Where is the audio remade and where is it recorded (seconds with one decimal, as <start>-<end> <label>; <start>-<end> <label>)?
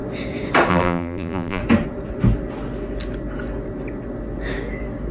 0.0-0.7 recorded; 0.7-1.6 remade; 1.6-5.1 recorded